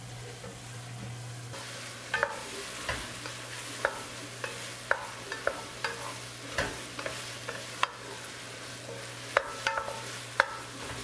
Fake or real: real